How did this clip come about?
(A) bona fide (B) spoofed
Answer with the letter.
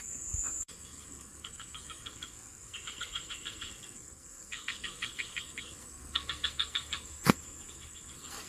B